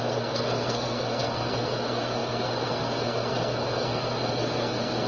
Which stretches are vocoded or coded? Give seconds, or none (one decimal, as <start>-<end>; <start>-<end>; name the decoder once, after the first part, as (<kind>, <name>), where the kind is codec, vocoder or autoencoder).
0.0-5.1 (codec, SNAC)